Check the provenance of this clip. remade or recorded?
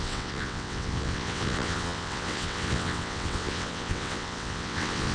remade